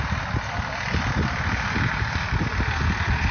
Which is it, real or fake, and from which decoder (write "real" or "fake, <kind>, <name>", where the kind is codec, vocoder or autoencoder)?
real